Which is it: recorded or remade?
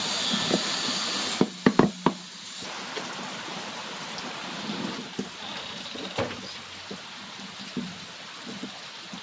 recorded